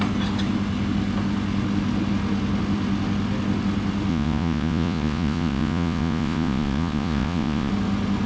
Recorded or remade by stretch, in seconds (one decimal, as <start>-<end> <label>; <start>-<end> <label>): 0.0-4.1 recorded; 4.1-7.7 remade; 7.7-8.3 recorded